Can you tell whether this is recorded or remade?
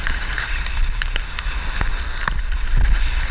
recorded